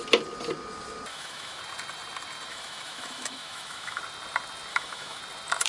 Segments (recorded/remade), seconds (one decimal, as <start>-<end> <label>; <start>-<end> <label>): 0.0-1.1 recorded; 1.1-1.6 remade; 1.6-2.5 recorded; 2.5-4.0 remade; 4.0-4.7 recorded; 4.7-5.2 remade; 5.2-5.7 recorded